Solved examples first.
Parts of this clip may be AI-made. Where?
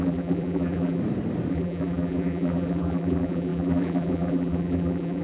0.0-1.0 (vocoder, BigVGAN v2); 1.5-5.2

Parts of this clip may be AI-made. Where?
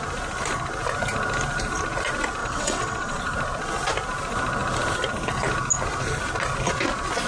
2.4-3.2 (vocoder, WaveNeXt)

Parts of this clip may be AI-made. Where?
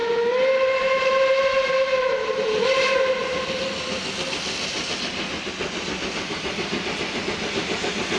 0.0-2.6 (vocoder, BigVGAN v2)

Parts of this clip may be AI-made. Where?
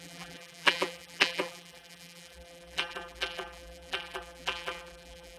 0.0-5.4 (vocoder, BigVGAN v2)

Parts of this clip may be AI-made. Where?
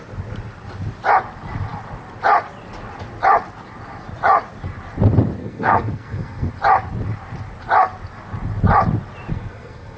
5.4-6.5 (codec, SNAC); 9.3-10.0